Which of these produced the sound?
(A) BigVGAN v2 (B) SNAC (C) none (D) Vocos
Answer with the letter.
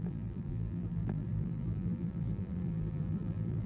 A